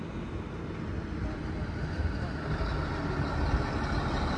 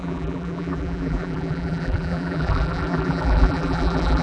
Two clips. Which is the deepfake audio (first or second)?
second